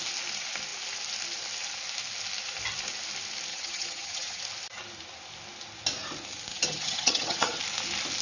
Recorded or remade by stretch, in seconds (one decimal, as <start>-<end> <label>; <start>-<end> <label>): 0.0-3.5 recorded; 3.5-4.4 remade; 4.4-6.5 recorded; 6.5-7.6 remade; 7.6-8.2 recorded